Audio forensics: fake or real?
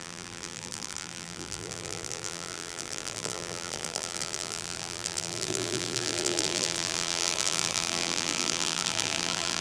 fake